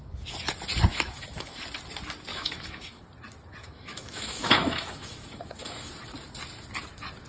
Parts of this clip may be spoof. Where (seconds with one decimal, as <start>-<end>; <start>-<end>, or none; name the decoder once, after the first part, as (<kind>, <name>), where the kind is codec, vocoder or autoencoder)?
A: 0.9-1.6 (autoencoder, DAC-VAE); 2.3-3.0; 3.6-5.9